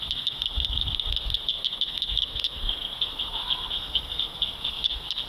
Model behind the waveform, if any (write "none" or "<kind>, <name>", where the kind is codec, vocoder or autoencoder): codec, SNAC